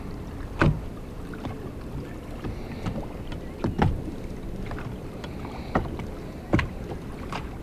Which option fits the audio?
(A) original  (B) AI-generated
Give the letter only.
A